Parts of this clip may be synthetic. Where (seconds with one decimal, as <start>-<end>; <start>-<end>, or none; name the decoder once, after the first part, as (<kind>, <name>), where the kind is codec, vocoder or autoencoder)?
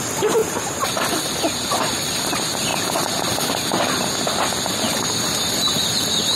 0.0-0.4 (vocoder, BigVGAN v2); 1.7-2.7